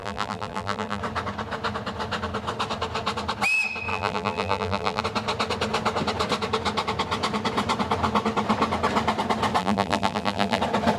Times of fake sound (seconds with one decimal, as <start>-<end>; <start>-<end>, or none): 0.0-1.0; 3.9-5.0; 9.6-10.6